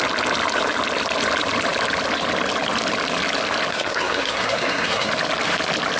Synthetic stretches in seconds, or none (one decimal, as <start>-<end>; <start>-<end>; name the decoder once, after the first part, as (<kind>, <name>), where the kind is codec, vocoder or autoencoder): 3.7-5.1 (codec, SNAC)